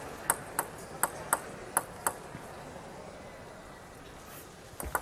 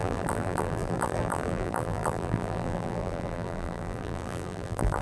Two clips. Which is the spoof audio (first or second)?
second